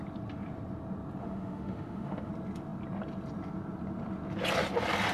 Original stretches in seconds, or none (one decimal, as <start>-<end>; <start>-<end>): 0.0-1.2; 2.3-5.1

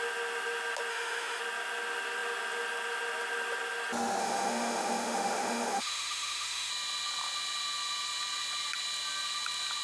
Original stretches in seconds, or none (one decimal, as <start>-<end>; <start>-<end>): 0.0-0.9; 1.4-4.2; 6.7-9.8

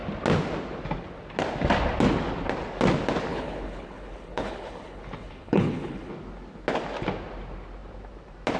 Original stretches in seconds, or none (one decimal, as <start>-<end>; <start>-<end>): 0.0-3.3; 6.1-8.6

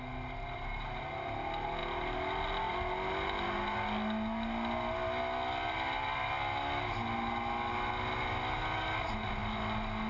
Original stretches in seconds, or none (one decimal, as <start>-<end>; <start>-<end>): 0.0-10.1